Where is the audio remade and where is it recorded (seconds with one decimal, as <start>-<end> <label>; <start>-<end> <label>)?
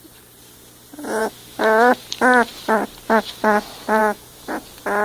0.0-1.2 recorded; 1.2-1.9 remade; 1.9-4.0 recorded; 4.0-4.5 remade; 4.5-5.0 recorded